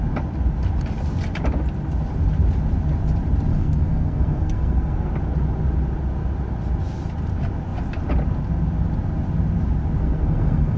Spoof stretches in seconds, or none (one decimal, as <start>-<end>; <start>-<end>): 3.5-5.1; 10.0-10.8